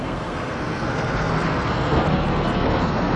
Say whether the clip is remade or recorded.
remade